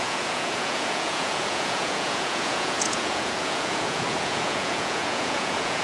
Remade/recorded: remade